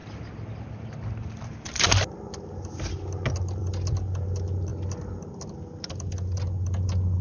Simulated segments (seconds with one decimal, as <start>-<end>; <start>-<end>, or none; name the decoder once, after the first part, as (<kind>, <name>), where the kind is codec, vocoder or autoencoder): none